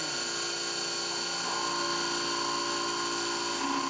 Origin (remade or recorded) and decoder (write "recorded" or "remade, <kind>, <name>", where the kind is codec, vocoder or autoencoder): recorded